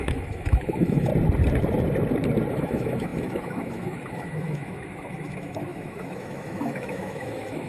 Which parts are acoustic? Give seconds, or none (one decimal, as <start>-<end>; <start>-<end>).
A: 1.1-2.5